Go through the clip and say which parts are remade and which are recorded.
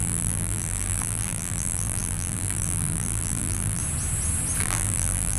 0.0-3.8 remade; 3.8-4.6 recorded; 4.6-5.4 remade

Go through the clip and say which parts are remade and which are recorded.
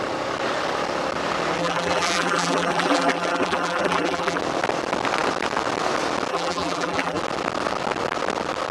0.0-1.6 recorded; 1.6-4.4 remade; 4.4-6.3 recorded; 6.3-7.2 remade; 7.2-8.7 recorded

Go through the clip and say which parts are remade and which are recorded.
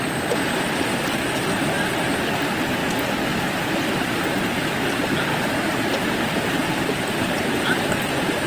0.0-8.5 recorded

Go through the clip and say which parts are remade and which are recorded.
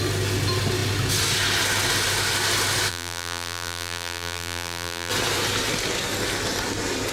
0.0-2.9 recorded; 2.9-5.1 remade; 5.1-7.1 recorded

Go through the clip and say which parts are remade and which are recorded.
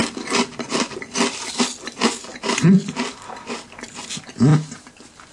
0.0-2.3 recorded; 2.3-4.0 remade; 4.0-5.3 recorded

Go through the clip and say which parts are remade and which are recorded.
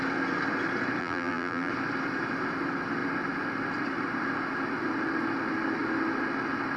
0.0-1.0 recorded; 1.0-1.7 remade; 1.7-6.8 recorded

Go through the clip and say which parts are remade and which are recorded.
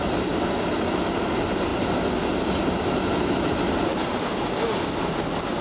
0.0-5.6 recorded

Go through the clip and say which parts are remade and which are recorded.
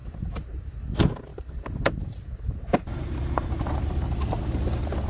0.0-1.3 recorded; 1.3-4.4 remade; 4.4-5.1 recorded